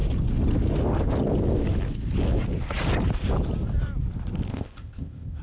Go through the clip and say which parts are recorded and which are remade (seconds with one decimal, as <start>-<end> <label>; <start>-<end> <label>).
0.0-4.5 recorded; 4.5-5.4 remade